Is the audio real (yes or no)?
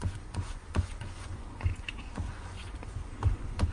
no